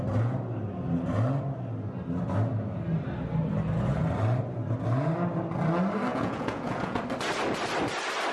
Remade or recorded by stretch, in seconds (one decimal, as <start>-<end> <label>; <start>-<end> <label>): 0.0-6.1 recorded; 6.1-7.0 remade; 7.0-8.3 recorded